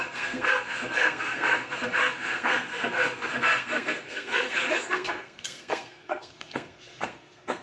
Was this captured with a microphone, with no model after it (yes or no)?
no